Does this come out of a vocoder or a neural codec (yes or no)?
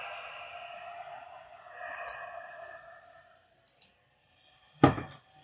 no